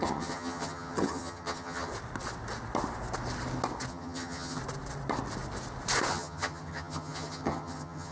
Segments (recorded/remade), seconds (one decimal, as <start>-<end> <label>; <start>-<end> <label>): 0.0-1.9 remade; 1.9-3.9 recorded; 3.9-4.6 remade; 4.6-6.1 recorded; 6.1-8.1 remade